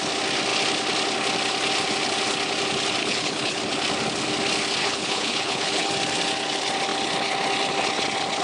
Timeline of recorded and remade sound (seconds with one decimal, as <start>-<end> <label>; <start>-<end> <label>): 0.0-3.0 recorded; 3.0-3.6 remade; 3.6-4.8 recorded; 4.8-5.9 remade; 5.9-8.4 recorded